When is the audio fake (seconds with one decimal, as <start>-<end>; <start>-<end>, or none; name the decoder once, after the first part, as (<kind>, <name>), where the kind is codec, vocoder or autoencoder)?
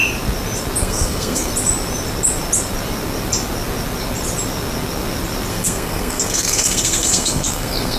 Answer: 0.8-1.5 (codec, SNAC); 5.5-8.0